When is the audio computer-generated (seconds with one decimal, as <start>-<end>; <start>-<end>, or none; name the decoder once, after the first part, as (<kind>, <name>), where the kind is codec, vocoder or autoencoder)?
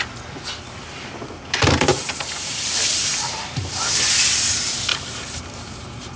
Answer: 1.9-4.1 (vocoder, BigVGAN v2); 4.9-6.2